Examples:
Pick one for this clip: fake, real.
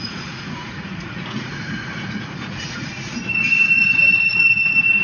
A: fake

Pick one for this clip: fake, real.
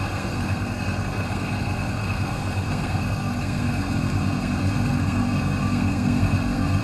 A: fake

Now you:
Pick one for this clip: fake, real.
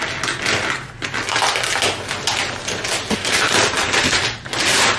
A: real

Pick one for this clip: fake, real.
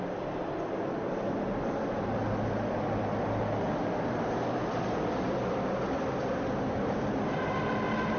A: real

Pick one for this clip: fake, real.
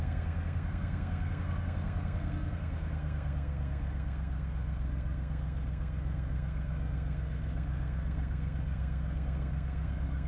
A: fake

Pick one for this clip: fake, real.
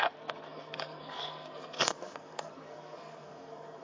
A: fake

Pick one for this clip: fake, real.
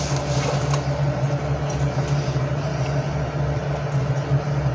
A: real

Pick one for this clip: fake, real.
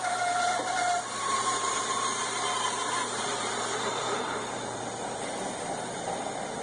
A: fake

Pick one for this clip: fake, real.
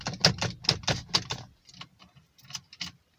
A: real